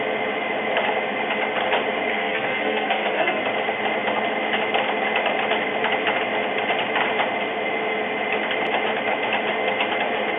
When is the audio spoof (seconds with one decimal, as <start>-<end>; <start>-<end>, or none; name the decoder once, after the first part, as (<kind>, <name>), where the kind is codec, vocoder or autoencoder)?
2.1-3.4 (codec, SNAC)